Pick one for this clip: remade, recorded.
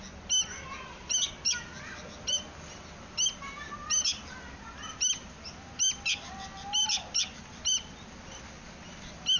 recorded